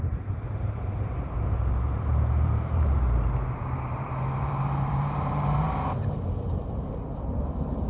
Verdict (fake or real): fake